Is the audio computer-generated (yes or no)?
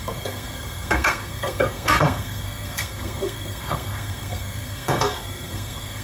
yes